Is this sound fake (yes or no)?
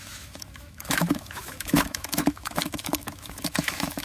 yes